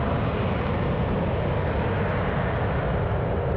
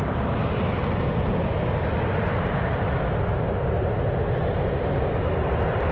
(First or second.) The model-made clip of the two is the second